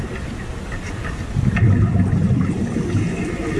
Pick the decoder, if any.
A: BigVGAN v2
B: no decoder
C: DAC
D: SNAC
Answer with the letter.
B